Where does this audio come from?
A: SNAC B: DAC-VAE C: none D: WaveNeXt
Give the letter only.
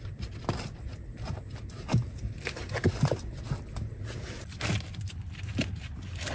C